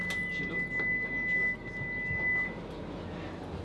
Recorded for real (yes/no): yes